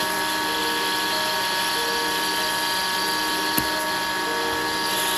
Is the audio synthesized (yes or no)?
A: no